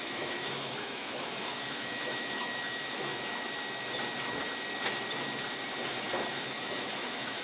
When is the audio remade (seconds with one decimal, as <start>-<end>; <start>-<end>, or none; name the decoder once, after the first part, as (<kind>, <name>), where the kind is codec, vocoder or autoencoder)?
0.0-3.1 (autoencoder, DAC-VAE); 6.3-7.4